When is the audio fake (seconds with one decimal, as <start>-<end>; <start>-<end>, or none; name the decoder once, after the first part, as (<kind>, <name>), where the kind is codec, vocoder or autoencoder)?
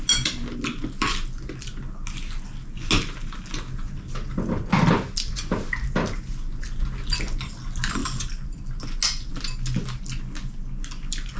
8.0-8.6 (vocoder, BigVGAN v2)